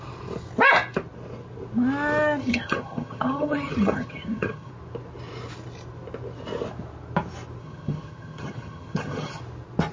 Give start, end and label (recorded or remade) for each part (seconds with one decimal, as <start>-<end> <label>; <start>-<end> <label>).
0.0-2.4 recorded; 2.4-4.7 remade; 4.7-7.6 recorded; 7.6-9.4 remade; 9.4-9.9 recorded